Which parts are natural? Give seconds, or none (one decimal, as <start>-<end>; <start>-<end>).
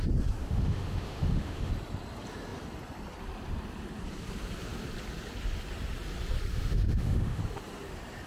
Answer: 0.0-0.4; 1.7-6.5; 7.4-8.3